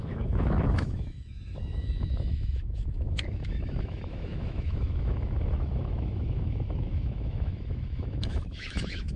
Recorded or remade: remade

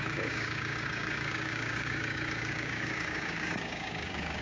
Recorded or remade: remade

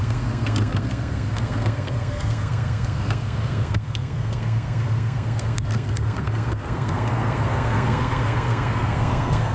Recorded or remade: remade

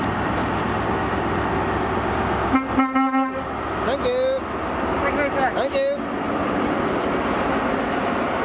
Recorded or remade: recorded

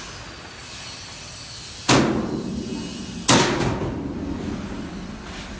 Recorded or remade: recorded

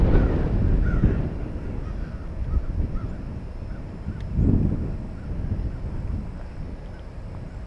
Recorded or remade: recorded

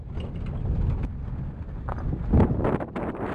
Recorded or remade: recorded